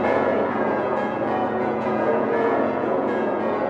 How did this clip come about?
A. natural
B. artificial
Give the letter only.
B